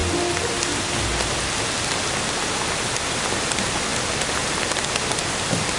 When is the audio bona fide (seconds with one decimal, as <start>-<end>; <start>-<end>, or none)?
0.0-5.8